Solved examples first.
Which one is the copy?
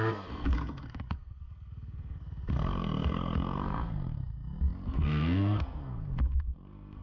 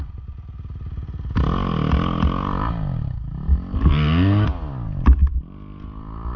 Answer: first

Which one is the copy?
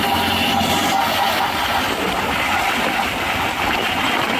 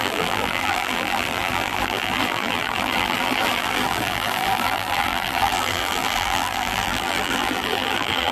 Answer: second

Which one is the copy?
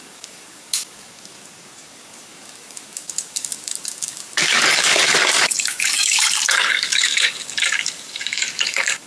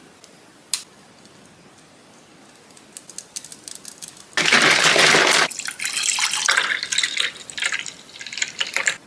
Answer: first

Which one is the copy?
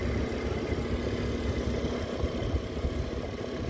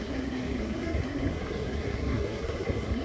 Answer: second